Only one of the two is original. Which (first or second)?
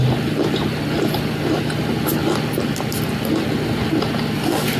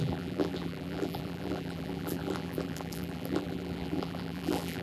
first